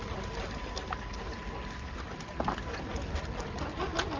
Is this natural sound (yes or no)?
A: yes